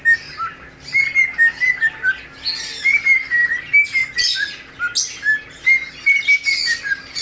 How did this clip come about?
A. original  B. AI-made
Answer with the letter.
A